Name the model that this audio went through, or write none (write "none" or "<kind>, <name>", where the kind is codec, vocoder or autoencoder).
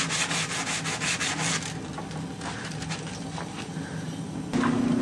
none